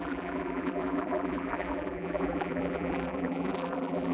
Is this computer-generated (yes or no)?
yes